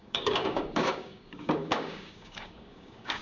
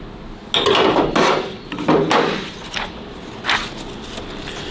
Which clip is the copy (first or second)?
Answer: first